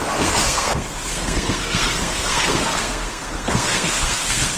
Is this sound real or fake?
fake